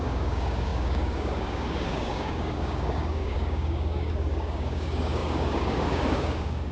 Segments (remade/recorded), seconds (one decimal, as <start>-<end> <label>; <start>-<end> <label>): 0.0-6.7 remade